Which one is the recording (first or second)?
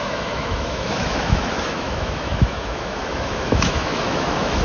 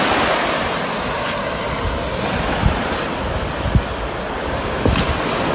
second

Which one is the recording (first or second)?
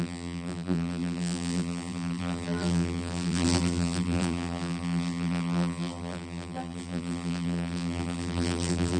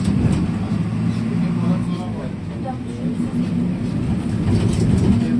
second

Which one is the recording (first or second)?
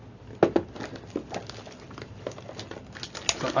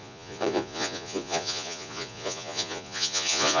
first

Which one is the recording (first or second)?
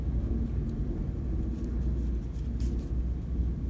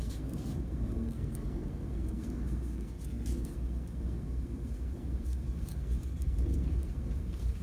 first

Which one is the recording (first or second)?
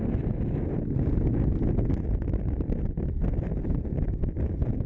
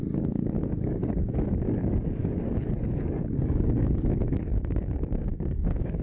first